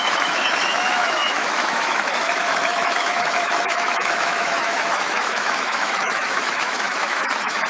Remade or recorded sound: remade